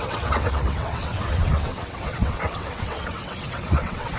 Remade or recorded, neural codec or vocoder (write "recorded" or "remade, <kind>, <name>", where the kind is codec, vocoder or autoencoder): remade, vocoder, WaveNeXt